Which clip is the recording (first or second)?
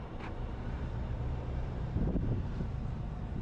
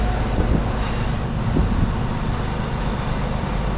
second